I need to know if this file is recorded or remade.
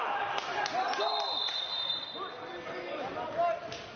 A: recorded